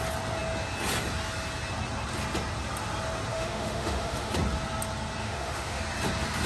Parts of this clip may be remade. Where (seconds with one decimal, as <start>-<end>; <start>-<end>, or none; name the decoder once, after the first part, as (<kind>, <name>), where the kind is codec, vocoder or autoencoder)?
3.3-4.3 (autoencoder, DAC-VAE); 5.2-5.8

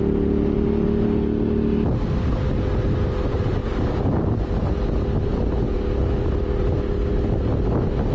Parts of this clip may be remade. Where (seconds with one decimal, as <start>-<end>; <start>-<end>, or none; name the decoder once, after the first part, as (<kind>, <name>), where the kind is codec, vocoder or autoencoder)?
none